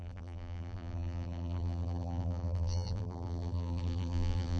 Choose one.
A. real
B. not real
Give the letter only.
B